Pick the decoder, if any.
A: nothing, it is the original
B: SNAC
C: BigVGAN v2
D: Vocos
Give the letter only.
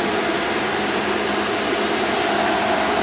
A